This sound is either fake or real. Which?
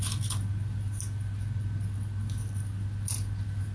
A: real